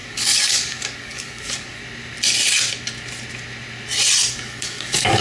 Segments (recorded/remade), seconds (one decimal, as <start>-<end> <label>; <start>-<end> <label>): 0.0-1.8 remade; 1.8-4.3 recorded; 4.3-5.2 remade